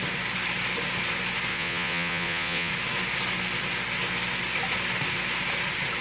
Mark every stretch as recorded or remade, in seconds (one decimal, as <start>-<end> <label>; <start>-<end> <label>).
0.0-1.5 recorded; 1.5-2.7 remade; 2.7-6.0 recorded